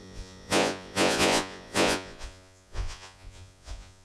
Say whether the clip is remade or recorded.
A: remade